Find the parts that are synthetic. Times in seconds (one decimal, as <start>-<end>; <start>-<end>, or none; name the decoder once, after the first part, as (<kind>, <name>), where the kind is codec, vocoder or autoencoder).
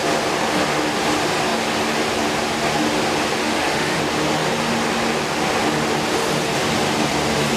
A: 3.4-4.0 (autoencoder, DAC-VAE)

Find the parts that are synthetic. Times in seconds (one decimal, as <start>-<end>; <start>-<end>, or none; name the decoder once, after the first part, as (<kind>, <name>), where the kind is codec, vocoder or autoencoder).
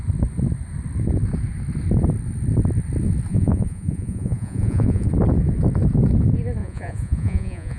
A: 3.3-5.1 (vocoder, Vocos); 6.6-7.8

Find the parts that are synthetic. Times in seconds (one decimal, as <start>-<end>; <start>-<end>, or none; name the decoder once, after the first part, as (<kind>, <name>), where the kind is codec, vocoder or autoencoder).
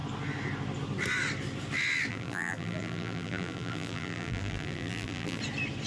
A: 2.1-5.4 (vocoder, BigVGAN v2)